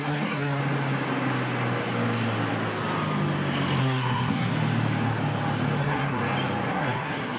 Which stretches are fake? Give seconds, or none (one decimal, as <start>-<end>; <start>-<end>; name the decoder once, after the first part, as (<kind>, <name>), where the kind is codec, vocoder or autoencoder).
0.0-0.6 (codec, SNAC); 3.8-4.5; 5.8-6.2; 6.7-7.4